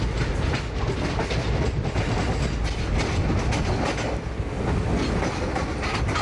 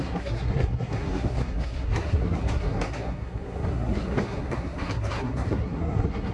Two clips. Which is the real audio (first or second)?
first